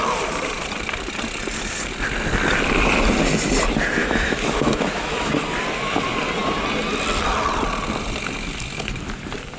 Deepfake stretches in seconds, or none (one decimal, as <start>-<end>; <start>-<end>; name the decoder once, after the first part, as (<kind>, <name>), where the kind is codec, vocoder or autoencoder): 4.0-5.3 (autoencoder, DAC-VAE)